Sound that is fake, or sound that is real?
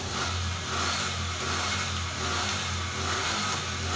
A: real